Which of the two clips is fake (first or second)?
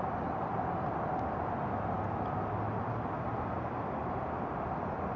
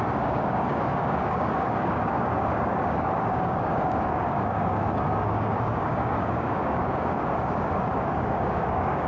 second